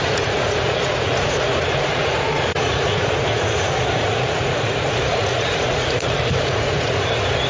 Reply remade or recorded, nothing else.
remade